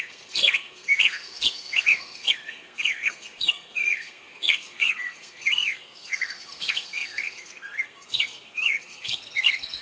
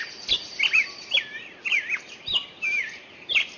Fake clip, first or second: first